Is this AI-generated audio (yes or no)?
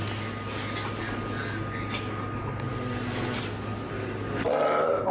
no